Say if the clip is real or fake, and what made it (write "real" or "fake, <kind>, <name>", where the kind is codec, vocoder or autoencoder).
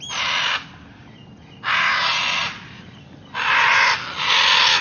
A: real